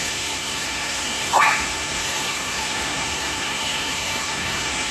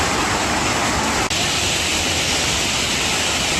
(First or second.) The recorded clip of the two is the second